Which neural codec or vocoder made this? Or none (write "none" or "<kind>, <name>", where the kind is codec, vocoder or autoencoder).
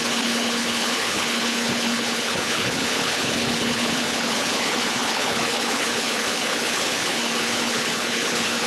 codec, HILCodec